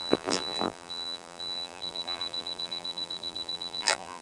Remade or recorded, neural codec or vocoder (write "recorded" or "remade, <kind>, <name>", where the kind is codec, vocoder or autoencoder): remade, vocoder, BigVGAN v2